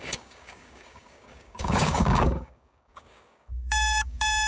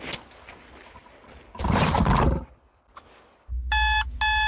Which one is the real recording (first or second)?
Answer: second